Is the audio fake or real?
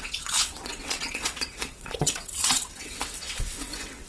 fake